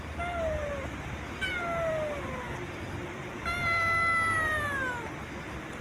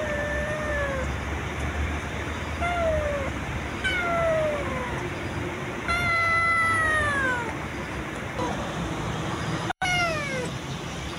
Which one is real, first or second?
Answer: first